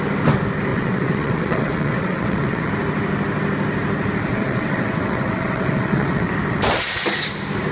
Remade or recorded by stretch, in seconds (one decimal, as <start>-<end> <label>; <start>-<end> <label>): 0.0-0.7 recorded; 0.7-2.7 remade; 2.7-4.3 recorded; 4.3-6.3 remade; 6.3-7.7 recorded